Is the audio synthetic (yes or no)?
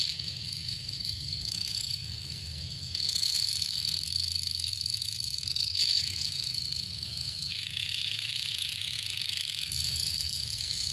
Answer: yes